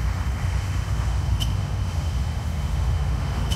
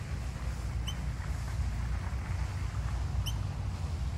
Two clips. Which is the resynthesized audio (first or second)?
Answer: first